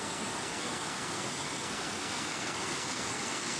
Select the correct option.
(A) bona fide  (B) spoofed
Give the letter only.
B